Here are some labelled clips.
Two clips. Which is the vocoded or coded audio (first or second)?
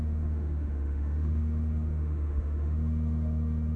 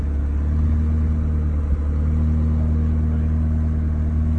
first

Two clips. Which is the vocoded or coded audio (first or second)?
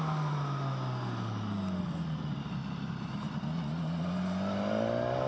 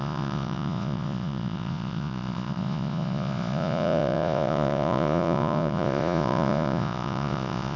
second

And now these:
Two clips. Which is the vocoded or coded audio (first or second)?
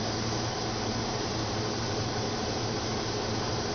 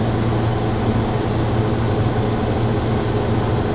first